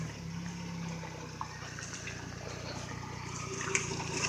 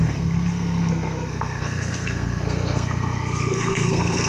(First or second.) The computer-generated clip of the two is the second